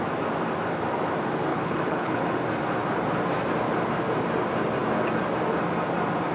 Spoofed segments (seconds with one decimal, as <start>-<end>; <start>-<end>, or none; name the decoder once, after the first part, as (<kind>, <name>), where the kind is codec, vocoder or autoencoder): 1.5-2.2 (codec, HILCodec)